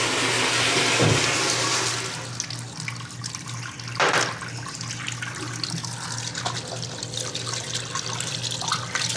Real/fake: real